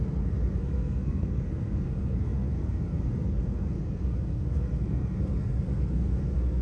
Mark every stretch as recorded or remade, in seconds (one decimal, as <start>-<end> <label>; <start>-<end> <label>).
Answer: 0.0-6.6 remade